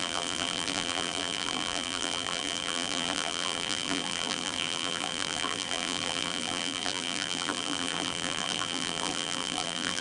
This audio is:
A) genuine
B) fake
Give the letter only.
B